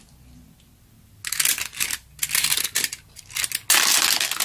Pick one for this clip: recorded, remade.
recorded